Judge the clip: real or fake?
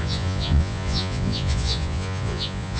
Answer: fake